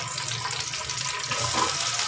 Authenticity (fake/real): real